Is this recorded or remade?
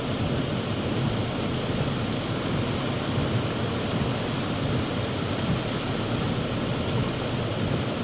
recorded